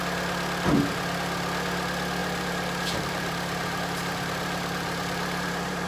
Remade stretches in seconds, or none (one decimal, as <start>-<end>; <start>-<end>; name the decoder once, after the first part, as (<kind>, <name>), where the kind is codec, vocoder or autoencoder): 2.2-5.9 (vocoder, BigVGAN v2)